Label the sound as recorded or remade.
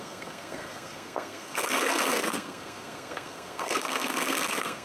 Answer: remade